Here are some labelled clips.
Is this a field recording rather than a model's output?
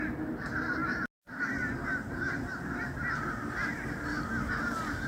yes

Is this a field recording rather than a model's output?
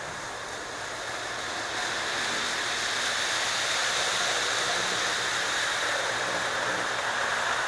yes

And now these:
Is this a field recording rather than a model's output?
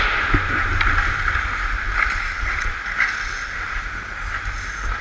yes